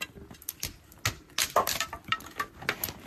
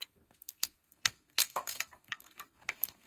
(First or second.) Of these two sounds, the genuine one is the first